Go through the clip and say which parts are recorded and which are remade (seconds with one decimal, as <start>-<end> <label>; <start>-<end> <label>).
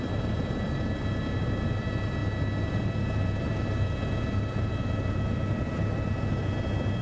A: 0.0-2.2 remade; 2.2-2.7 recorded; 2.7-7.0 remade